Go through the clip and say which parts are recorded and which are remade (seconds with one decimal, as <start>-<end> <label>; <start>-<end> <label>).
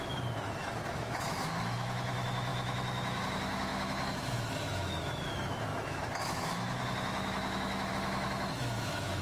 0.0-9.2 remade